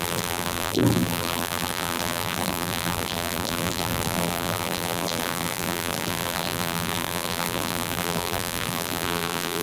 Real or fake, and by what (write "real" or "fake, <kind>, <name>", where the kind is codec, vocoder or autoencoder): fake, vocoder, BigVGAN v2